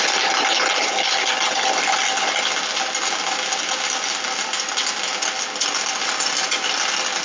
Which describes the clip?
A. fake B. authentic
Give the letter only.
B